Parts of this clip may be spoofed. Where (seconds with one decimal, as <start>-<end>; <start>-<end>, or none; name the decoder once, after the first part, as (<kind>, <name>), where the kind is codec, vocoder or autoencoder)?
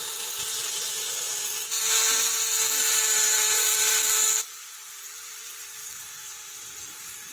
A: 2.3-4.0 (vocoder, BigVGAN v2); 4.5-5.1; 5.8-6.7